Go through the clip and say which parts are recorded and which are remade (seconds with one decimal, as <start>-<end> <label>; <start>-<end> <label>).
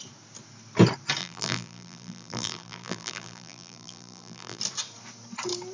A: 0.0-1.2 recorded; 1.2-4.6 remade; 4.6-5.7 recorded